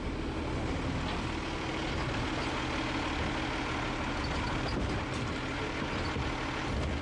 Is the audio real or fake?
real